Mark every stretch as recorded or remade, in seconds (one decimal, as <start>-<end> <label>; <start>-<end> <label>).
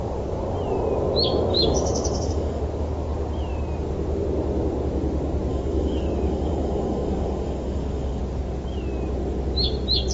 0.0-1.5 recorded; 1.5-2.6 remade; 2.6-5.5 recorded; 5.5-8.2 remade; 8.2-10.1 recorded